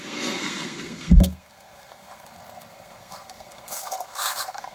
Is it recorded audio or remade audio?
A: remade